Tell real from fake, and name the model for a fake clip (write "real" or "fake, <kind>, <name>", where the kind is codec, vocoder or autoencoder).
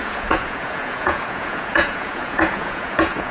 fake, vocoder, Vocos